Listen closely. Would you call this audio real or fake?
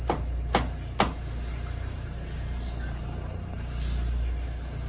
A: real